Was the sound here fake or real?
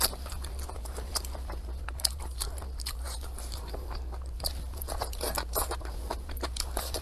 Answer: fake